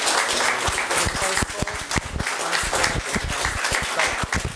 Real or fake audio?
real